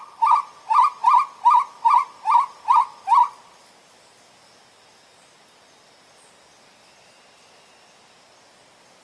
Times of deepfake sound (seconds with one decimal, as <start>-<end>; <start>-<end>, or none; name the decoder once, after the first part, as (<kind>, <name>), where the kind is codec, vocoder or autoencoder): none